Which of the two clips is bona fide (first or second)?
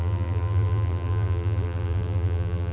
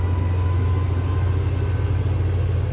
second